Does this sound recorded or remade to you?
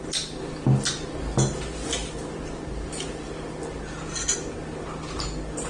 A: recorded